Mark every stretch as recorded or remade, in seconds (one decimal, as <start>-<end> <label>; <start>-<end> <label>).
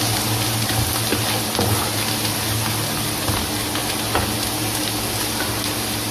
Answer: 0.0-6.1 recorded